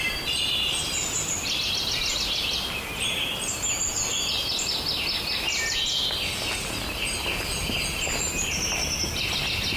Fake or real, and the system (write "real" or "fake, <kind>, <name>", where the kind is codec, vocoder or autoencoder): real